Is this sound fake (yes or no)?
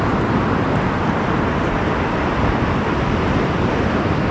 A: no